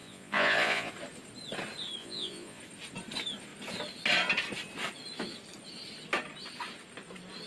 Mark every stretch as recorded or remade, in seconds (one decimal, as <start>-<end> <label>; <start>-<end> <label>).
0.0-0.9 remade; 0.9-2.0 recorded; 2.0-2.6 remade; 2.6-7.5 recorded